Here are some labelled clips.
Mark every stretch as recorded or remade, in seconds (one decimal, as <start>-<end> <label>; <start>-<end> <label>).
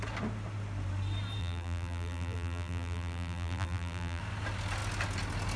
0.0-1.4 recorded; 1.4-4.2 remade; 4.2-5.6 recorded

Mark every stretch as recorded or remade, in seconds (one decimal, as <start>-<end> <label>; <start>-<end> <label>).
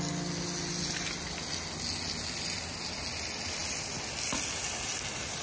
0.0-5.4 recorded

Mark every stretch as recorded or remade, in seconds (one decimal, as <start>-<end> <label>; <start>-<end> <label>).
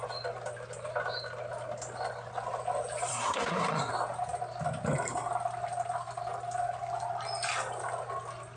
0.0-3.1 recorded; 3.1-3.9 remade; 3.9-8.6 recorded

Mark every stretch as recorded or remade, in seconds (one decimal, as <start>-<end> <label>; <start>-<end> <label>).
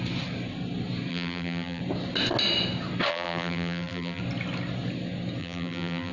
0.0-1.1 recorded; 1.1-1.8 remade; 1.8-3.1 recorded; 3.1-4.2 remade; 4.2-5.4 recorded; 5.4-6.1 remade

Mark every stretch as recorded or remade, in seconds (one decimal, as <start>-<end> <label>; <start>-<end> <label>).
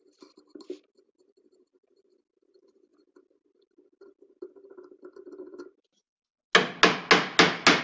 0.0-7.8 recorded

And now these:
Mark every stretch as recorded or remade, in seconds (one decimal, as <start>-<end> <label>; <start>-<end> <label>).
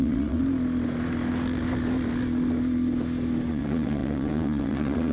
0.0-0.4 remade; 0.4-3.5 recorded; 3.5-5.1 remade